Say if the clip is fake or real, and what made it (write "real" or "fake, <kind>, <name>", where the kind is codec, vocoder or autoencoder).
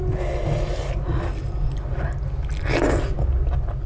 real